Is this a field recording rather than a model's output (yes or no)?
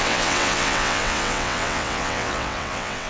no